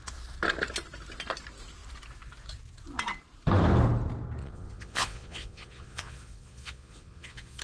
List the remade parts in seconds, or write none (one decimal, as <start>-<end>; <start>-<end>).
4.4-7.6